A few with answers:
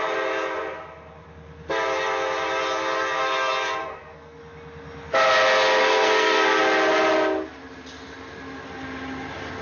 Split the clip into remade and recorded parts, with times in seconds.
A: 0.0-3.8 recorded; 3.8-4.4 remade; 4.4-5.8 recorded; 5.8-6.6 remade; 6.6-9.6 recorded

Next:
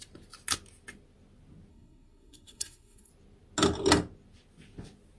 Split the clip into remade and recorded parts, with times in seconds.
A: 0.0-1.7 recorded; 1.7-3.1 remade; 3.1-5.2 recorded

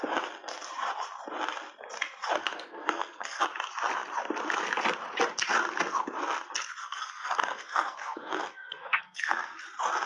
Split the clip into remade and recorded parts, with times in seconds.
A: 0.0-2.4 recorded; 2.4-3.4 remade; 3.4-6.8 recorded; 6.8-9.6 remade; 9.6-10.1 recorded